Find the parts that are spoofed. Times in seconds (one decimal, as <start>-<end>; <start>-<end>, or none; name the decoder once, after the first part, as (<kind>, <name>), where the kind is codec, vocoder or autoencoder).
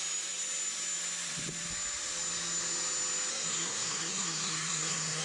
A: 3.3-5.2 (codec, SNAC)